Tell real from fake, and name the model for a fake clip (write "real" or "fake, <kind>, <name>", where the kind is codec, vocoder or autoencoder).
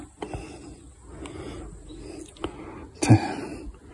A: real